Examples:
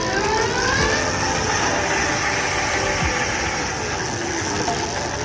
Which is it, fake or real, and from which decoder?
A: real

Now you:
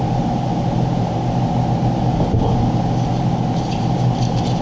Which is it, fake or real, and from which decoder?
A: real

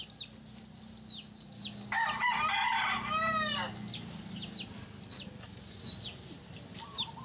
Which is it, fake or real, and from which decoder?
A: real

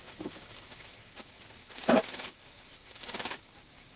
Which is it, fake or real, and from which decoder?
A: fake, codec, DAC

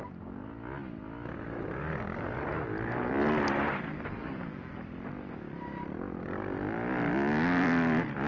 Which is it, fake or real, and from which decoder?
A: real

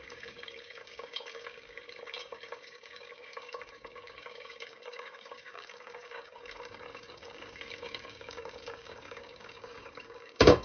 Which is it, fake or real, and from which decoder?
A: fake, codec, DAC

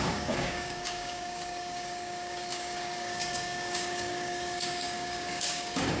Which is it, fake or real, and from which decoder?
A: fake, codec, DAC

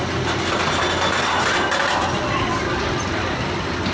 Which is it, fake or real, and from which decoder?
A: real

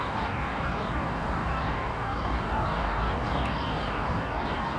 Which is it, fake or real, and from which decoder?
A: fake, codec, DAC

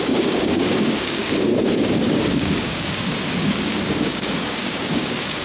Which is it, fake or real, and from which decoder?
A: fake, codec, DAC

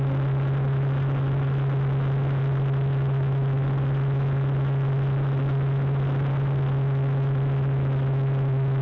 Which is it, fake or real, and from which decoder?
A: real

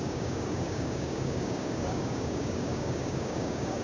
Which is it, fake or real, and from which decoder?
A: fake, codec, DAC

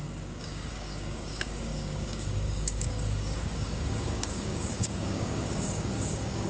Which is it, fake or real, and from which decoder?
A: fake, codec, DAC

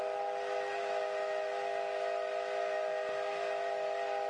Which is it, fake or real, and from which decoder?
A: real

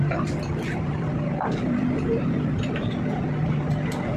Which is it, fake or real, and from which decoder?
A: real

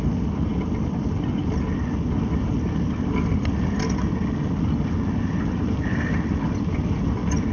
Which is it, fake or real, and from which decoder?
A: real